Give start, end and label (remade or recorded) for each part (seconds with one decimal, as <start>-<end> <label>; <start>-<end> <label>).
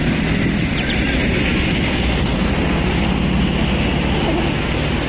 0.0-5.1 recorded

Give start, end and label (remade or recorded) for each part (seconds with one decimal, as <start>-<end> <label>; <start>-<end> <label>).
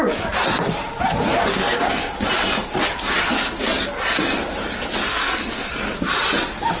0.0-1.5 recorded; 1.5-2.1 remade; 2.1-5.1 recorded; 5.1-5.7 remade; 5.7-6.8 recorded